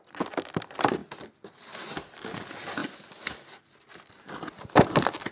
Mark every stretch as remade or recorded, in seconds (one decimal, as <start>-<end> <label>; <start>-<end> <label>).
0.0-5.3 recorded